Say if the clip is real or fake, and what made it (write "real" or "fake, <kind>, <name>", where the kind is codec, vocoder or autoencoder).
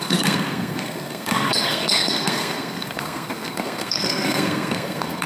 fake, codec, SNAC